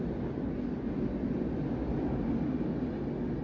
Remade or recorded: recorded